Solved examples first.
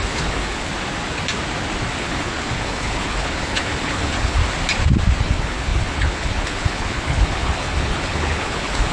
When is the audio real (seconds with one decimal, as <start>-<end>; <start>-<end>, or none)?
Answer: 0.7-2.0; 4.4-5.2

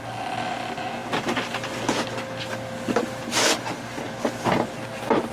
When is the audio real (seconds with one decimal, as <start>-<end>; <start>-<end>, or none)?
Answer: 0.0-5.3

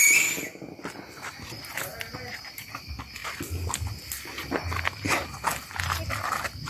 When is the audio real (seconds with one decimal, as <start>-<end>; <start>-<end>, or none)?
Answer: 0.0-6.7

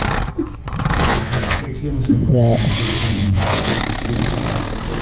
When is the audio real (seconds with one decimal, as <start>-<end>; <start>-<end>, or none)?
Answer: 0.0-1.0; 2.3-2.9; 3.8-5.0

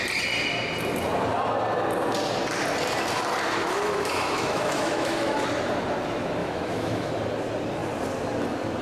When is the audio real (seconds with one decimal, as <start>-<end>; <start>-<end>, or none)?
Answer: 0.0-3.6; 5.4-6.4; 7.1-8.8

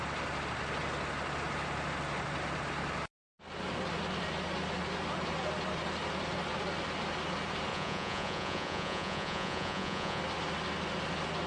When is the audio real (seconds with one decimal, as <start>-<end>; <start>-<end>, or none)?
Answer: 0.0-7.7; 10.2-11.5

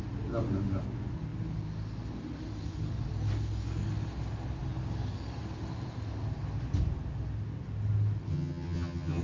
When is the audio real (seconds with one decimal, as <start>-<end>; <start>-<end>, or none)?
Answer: 0.0-8.3

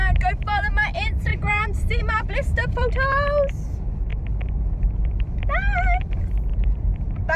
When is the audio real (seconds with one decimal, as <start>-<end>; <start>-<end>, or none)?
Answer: 0.0-1.3; 2.9-4.1; 4.9-6.5